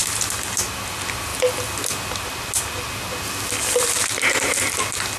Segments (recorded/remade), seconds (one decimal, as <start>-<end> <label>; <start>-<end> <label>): 0.0-5.2 recorded